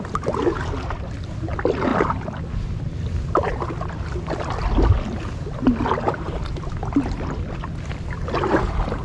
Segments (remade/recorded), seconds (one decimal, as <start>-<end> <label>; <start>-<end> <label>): 0.0-9.0 recorded